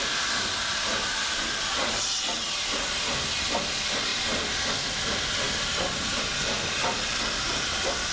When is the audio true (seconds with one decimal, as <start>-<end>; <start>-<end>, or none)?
0.0-2.4; 3.0-4.1; 4.6-8.1